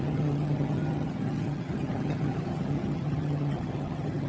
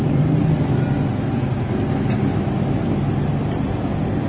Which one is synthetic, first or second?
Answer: first